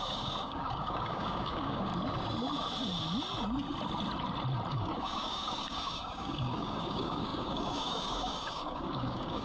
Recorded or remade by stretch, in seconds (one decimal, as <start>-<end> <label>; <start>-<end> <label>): 0.0-1.9 remade; 1.9-4.7 recorded; 4.7-9.4 remade

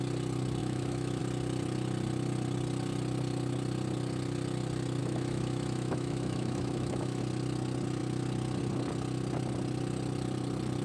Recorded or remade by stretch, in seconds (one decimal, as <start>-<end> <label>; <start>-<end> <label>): 0.0-0.6 recorded; 0.6-1.2 remade; 1.2-5.0 recorded; 5.0-7.2 remade; 7.2-10.8 recorded

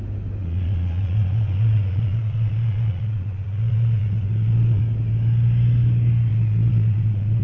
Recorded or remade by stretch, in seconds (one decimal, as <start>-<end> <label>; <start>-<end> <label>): 0.0-0.4 recorded; 0.4-4.8 remade; 4.8-6.3 recorded; 6.3-7.4 remade

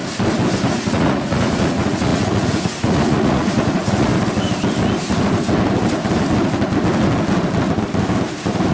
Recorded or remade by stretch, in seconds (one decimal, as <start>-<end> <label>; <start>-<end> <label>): 0.0-0.7 recorded; 0.7-4.1 remade; 4.1-8.7 recorded